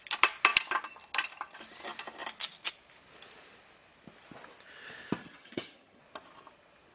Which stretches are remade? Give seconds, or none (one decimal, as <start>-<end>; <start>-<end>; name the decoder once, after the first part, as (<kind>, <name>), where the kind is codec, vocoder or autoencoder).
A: 5.2-6.0 (vocoder, HiFi-GAN)